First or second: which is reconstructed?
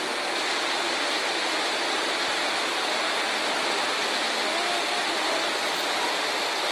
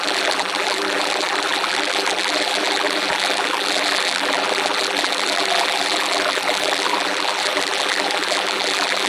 second